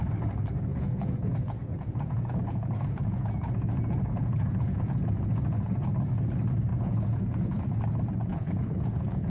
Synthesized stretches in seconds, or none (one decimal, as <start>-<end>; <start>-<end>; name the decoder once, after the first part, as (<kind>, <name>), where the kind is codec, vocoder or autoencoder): 0.7-5.9 (vocoder, Vocos); 6.7-7.6; 8.3-9.3